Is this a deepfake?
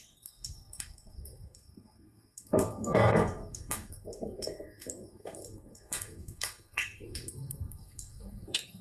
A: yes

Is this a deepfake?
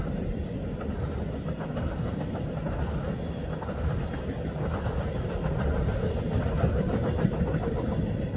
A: no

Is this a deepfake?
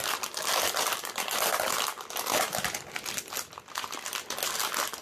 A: no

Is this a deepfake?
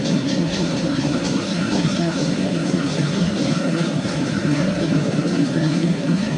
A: yes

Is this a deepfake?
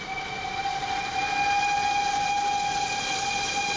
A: no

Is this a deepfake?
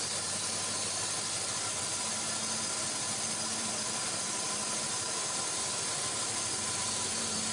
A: yes